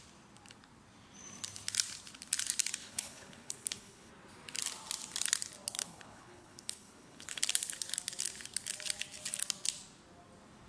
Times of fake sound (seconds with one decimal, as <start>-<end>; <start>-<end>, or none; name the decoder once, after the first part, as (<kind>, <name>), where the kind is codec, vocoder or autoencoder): 2.8-4.1 (codec, HILCodec); 5.8-7.4